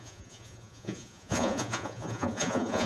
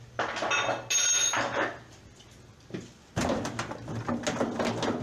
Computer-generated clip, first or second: first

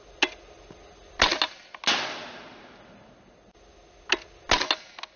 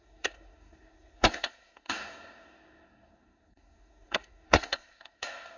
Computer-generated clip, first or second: second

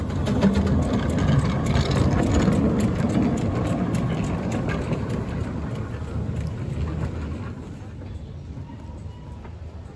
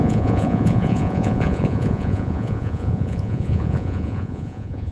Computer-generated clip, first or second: second